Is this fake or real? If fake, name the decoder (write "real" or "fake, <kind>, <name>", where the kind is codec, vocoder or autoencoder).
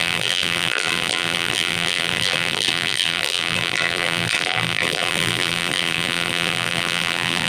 fake, vocoder, BigVGAN v2